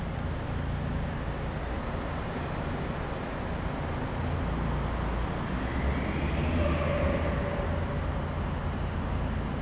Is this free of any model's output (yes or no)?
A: yes